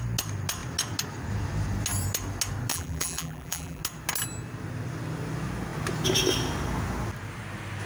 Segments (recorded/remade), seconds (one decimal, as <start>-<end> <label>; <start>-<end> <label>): 0.0-2.7 recorded; 2.7-3.8 remade; 3.8-7.9 recorded